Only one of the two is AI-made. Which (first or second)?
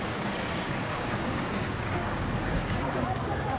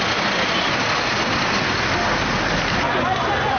first